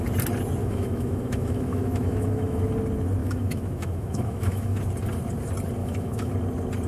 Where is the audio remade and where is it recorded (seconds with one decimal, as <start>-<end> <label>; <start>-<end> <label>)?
0.0-0.6 recorded; 0.6-2.6 remade; 2.6-3.2 recorded; 3.2-4.8 remade; 4.8-5.8 recorded; 5.8-6.3 remade; 6.3-6.9 recorded